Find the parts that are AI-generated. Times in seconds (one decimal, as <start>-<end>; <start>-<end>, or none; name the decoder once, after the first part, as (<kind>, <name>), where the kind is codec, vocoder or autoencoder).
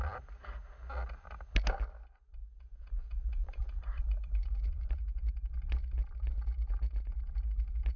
2.4-3.8 (vocoder, Vocos); 4.4-5.3